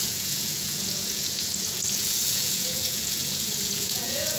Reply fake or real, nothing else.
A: fake